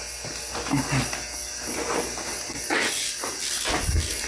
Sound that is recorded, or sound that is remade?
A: recorded